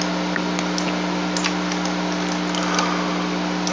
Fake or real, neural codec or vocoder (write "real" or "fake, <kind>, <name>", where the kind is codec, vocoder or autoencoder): real